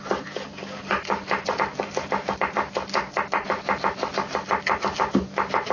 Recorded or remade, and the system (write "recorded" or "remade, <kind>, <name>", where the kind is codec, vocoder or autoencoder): recorded